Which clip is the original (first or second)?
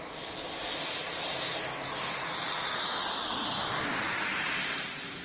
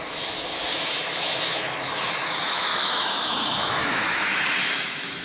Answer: first